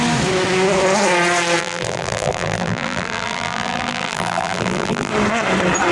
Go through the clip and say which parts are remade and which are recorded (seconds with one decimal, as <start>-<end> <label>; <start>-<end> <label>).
0.0-1.6 recorded; 1.6-5.1 remade; 5.1-5.9 recorded